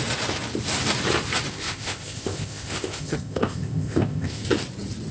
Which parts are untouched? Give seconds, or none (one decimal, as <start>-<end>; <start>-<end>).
0.0-1.5; 4.4-5.1

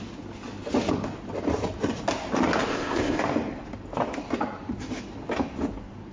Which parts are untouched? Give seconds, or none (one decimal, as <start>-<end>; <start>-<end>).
0.0-2.7; 3.2-6.1

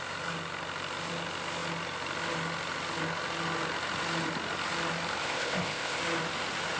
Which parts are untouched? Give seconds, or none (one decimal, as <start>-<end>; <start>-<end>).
0.0-5.2; 6.0-6.8

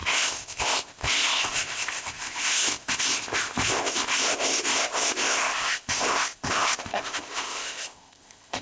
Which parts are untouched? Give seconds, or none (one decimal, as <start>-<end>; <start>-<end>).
none

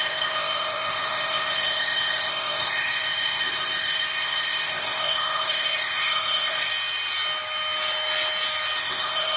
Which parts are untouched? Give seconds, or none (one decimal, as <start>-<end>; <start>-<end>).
6.7-8.8

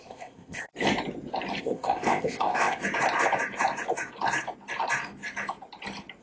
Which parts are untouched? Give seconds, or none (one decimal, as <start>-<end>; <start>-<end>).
0.7-1.6; 2.8-6.2